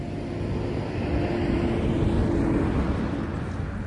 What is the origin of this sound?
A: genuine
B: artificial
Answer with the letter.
A